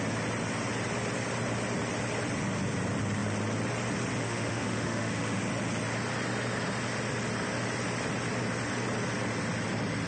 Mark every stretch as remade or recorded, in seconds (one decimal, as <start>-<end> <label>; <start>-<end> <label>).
0.0-4.2 recorded; 4.2-5.4 remade; 5.4-10.1 recorded